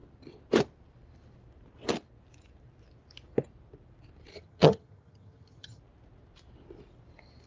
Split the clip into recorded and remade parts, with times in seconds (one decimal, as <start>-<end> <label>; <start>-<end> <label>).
0.0-4.3 recorded; 4.3-5.8 remade; 5.8-7.5 recorded

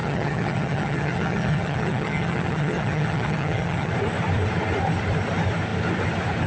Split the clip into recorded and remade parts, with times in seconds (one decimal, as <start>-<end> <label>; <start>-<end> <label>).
0.0-3.9 remade; 3.9-6.5 recorded

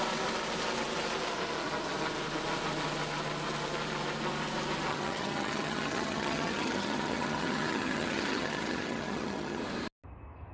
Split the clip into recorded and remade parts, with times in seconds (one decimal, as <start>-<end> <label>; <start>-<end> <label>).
0.0-4.9 recorded; 4.9-9.6 remade; 9.6-10.5 recorded

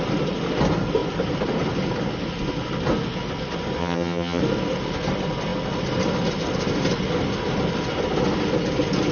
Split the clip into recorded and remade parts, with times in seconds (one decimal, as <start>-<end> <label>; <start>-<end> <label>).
0.0-3.8 recorded; 3.8-4.4 remade; 4.4-9.1 recorded

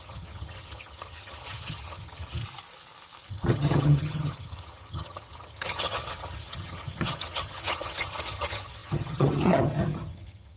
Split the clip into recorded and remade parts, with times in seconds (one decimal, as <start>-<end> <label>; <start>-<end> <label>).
0.0-2.4 remade; 2.4-3.3 recorded; 3.3-10.6 remade

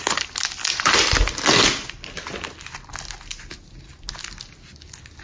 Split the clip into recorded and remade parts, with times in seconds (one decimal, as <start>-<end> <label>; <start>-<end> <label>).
0.0-5.2 recorded

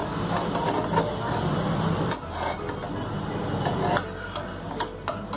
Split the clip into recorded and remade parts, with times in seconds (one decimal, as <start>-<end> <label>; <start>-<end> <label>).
0.0-5.4 recorded

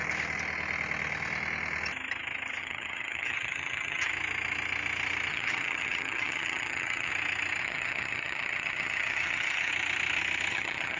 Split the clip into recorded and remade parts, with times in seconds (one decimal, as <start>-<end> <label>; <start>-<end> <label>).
0.0-2.6 recorded; 2.6-4.1 remade; 4.1-5.3 recorded; 5.3-7.1 remade; 7.1-7.6 recorded; 7.6-9.7 remade; 9.7-10.5 recorded; 10.5-11.0 remade